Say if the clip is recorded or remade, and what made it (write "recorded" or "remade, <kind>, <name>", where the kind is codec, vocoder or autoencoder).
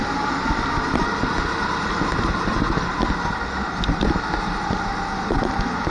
recorded